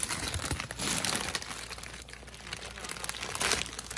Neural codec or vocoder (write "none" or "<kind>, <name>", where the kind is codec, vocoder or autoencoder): none